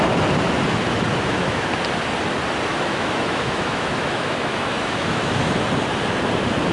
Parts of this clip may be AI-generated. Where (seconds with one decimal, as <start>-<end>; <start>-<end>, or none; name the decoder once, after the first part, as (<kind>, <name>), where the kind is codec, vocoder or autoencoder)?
1.1-1.7 (autoencoder, DAC-VAE); 2.7-5.4